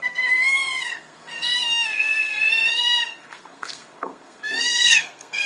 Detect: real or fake fake